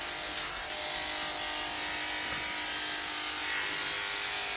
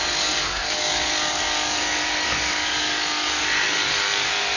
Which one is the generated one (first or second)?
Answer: second